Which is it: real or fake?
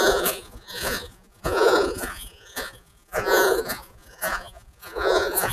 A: fake